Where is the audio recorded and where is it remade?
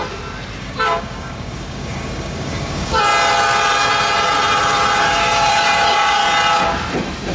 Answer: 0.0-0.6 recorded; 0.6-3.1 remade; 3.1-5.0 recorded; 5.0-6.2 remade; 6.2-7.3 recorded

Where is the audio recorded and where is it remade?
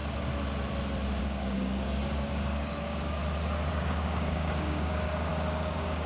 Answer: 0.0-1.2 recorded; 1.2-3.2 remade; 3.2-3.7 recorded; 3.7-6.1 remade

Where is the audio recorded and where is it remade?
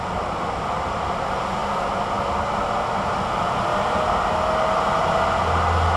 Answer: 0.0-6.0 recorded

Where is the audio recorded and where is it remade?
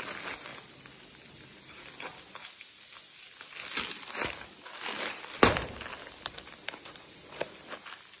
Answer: 0.0-8.2 recorded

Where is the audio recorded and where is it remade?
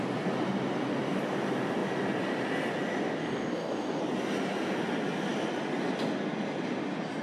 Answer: 0.0-3.2 recorded; 3.2-4.0 remade; 4.0-7.2 recorded